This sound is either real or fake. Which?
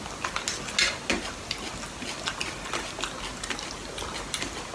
real